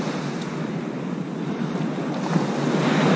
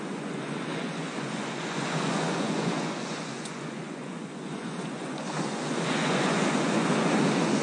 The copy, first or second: second